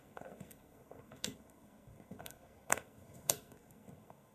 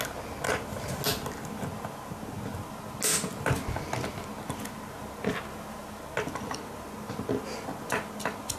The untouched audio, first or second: second